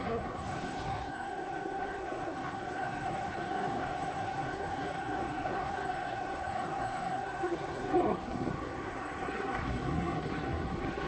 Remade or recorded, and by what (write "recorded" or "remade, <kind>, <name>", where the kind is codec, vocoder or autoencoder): remade, codec, SNAC